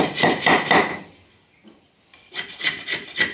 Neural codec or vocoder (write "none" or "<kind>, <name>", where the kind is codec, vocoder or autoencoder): none